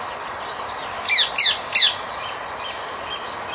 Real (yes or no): yes